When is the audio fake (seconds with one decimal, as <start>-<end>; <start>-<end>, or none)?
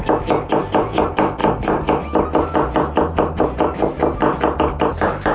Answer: none